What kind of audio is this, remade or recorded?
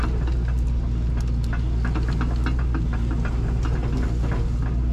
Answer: recorded